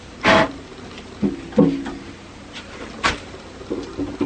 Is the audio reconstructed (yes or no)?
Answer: no